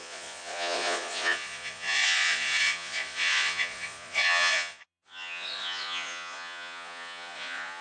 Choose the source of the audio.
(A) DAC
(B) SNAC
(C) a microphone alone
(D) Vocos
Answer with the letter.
D